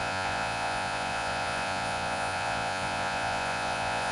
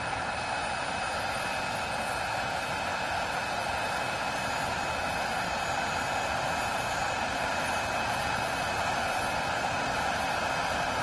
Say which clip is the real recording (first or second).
second